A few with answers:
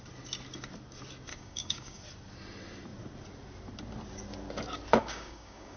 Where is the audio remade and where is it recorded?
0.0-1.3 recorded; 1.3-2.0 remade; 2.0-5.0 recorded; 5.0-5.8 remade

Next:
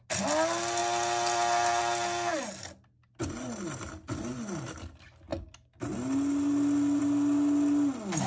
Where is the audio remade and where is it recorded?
0.0-8.3 recorded